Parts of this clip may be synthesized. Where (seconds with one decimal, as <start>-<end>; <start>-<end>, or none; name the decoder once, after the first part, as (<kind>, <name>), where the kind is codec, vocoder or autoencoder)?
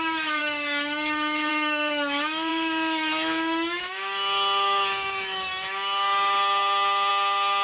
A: 0.0-7.6 (autoencoder, DAC-VAE)